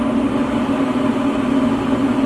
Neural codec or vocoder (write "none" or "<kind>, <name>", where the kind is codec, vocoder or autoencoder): none